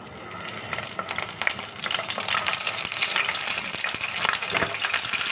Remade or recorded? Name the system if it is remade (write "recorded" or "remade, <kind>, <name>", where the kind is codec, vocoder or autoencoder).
remade, vocoder, BigVGAN v2